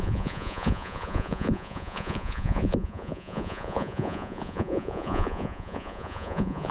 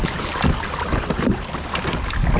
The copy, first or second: first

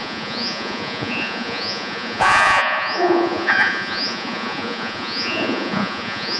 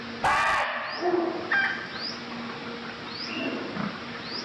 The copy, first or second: first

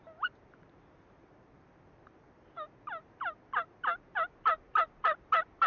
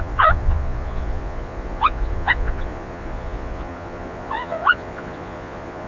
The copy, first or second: second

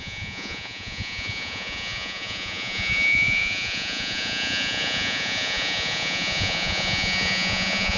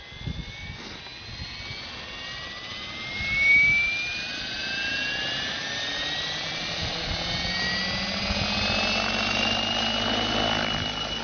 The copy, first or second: first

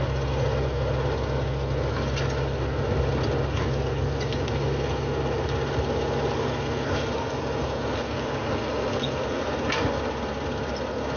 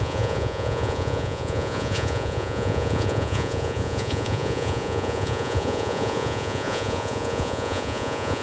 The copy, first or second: second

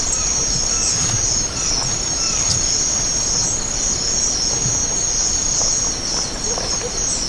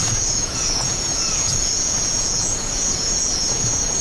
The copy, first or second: second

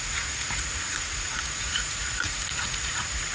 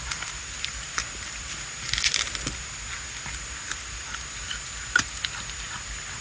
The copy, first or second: first